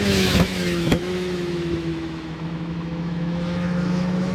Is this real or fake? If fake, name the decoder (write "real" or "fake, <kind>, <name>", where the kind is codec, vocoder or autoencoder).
fake, autoencoder, DAC-VAE